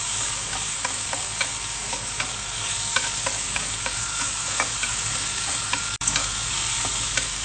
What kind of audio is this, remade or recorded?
remade